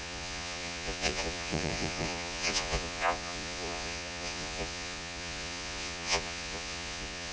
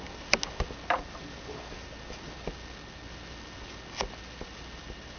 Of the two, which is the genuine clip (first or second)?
second